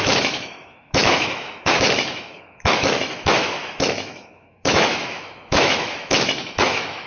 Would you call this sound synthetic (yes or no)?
yes